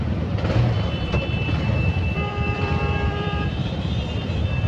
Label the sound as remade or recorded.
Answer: remade